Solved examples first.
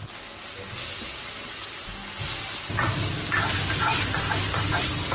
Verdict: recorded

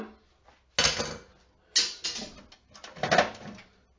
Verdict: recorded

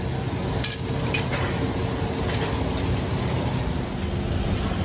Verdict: recorded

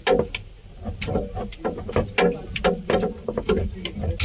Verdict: recorded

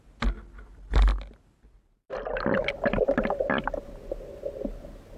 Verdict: recorded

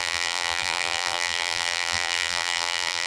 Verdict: remade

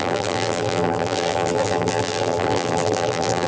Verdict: remade